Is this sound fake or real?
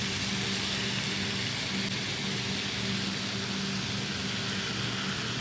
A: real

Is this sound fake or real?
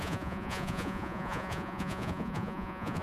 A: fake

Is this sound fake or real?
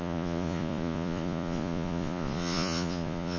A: fake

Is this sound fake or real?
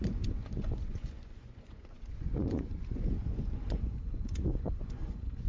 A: fake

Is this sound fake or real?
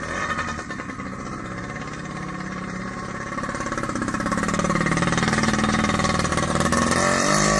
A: real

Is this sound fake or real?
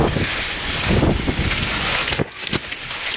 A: fake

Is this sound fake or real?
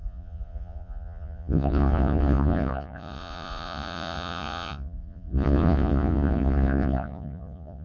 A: fake